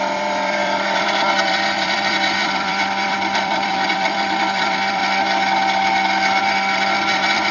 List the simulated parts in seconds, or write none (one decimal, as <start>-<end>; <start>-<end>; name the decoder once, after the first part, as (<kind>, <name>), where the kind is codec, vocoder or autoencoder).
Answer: 0.0-5.0 (vocoder, BigVGAN v2); 6.4-7.5